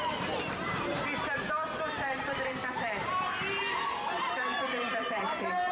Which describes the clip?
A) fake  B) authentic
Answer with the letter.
A